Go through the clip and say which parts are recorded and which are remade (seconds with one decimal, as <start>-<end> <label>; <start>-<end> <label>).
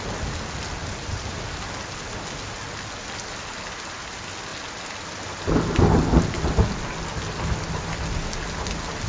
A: 0.0-9.1 recorded